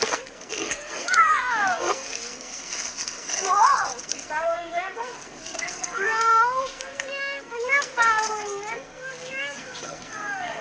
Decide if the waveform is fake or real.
fake